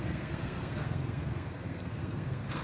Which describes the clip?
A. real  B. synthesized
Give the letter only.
B